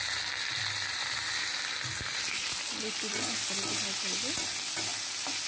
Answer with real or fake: real